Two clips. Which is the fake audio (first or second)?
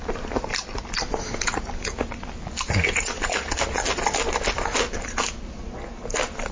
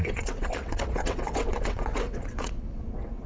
second